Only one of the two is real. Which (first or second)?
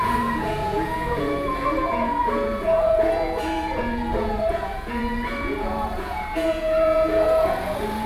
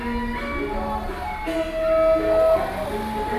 second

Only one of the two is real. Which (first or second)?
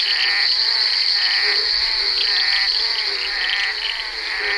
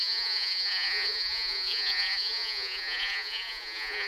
first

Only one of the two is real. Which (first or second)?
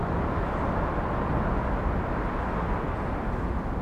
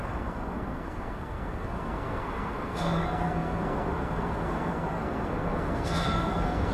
first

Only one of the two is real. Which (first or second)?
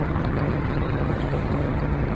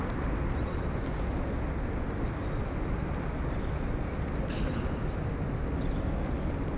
second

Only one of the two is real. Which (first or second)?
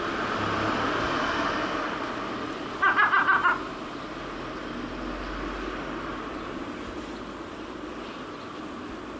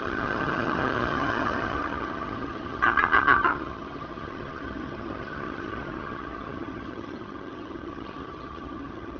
first